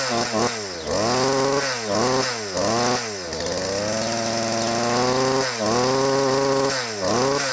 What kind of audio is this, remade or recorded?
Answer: recorded